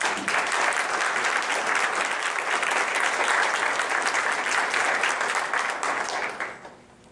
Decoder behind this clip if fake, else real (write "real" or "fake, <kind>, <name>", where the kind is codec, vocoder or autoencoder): real